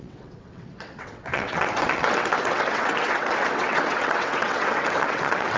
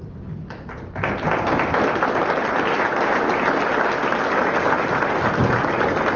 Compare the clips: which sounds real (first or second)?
second